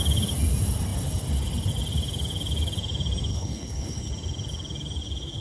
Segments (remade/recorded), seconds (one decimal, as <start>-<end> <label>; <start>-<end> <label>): 0.0-3.3 recorded; 3.3-4.1 remade; 4.1-5.4 recorded